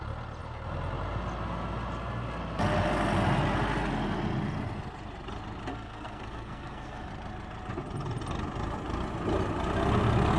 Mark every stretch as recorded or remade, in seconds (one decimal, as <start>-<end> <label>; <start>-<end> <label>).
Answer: 0.0-5.7 recorded; 5.7-7.1 remade; 7.1-10.4 recorded